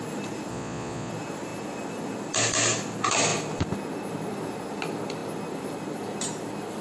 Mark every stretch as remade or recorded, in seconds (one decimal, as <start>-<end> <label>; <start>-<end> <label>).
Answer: 0.0-0.5 recorded; 0.5-1.1 remade; 1.1-6.8 recorded